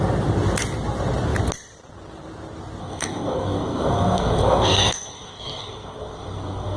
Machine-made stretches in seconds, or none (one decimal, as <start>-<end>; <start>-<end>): 2.8-6.8